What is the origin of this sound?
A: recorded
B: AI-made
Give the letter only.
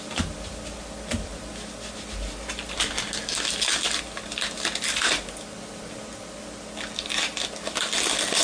A